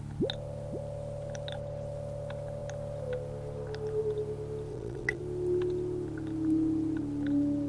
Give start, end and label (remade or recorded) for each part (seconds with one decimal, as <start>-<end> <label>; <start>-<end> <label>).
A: 0.0-4.7 recorded; 4.7-5.2 remade; 5.2-7.7 recorded